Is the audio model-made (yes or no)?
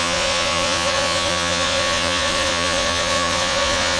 yes